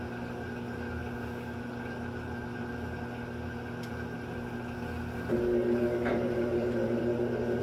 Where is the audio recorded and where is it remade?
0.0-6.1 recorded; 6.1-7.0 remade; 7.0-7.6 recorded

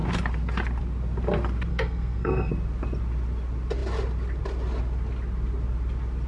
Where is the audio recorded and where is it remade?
0.0-1.7 recorded; 1.7-2.5 remade; 2.5-6.3 recorded

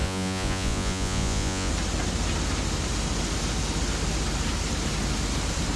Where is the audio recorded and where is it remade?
0.0-1.7 remade; 1.7-5.8 recorded